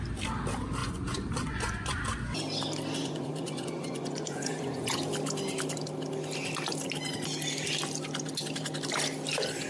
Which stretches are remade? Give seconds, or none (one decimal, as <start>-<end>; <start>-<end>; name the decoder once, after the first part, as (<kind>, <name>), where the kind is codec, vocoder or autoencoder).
0.8-2.0 (vocoder, Vocos); 3.0-5.0